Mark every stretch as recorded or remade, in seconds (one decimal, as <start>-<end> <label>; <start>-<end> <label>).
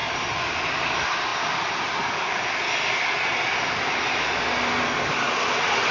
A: 0.0-5.9 recorded